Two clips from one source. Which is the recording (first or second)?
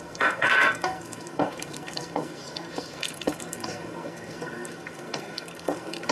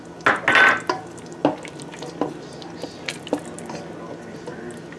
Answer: second